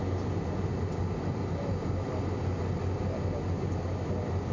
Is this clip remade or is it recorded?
recorded